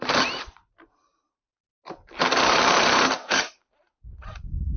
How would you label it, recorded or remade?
remade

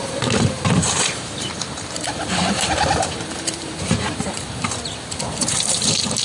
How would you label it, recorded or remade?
remade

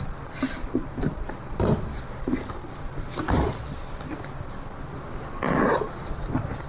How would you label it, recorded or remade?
remade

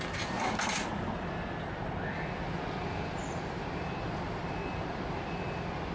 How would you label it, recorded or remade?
remade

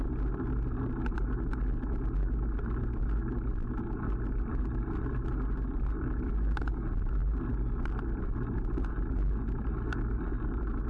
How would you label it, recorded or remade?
recorded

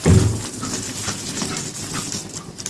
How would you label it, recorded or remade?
recorded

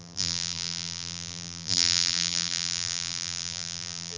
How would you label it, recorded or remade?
remade